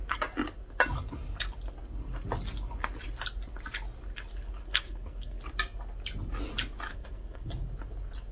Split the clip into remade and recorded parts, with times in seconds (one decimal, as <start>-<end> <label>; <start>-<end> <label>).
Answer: 0.0-4.6 recorded; 4.6-5.4 remade; 5.4-6.9 recorded; 6.9-7.5 remade; 7.5-8.3 recorded